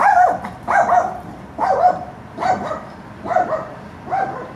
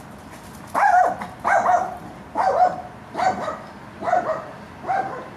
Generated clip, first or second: first